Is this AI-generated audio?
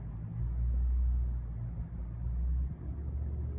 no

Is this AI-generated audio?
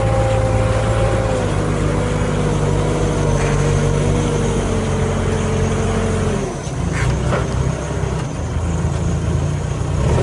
no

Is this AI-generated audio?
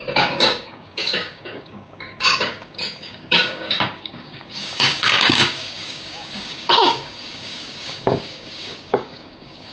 yes